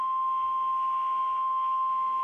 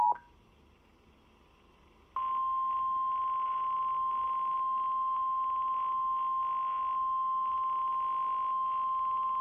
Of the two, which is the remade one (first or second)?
first